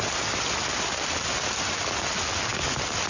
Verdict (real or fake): real